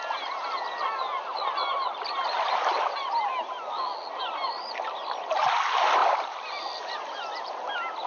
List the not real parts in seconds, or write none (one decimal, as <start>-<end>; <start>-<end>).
none